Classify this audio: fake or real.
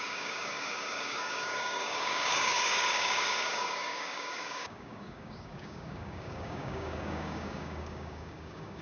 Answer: fake